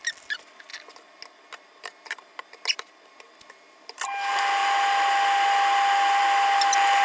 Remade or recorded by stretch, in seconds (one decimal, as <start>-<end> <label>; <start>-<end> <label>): 0.0-7.0 recorded